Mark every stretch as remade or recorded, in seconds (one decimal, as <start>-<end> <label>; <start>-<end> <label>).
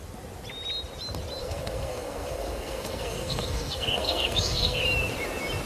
0.0-1.4 recorded; 1.4-4.8 remade; 4.8-5.7 recorded